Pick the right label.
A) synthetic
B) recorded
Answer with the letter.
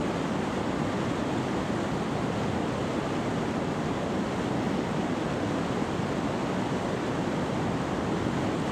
B